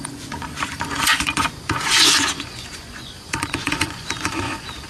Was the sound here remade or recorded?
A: remade